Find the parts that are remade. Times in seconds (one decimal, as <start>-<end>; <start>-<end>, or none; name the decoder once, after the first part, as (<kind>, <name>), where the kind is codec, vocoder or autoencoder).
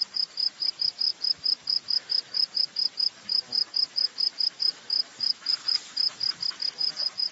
0.0-6.2 (vocoder, BigVGAN v2)